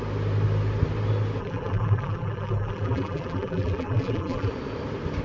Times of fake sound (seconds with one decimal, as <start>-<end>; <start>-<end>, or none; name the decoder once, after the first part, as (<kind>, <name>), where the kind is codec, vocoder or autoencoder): 1.4-4.5 (vocoder, BigVGAN v2)